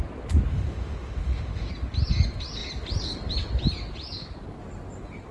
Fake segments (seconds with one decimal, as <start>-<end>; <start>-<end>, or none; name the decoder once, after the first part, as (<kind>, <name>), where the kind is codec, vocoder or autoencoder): 0.5-1.7 (autoencoder, DAC-VAE)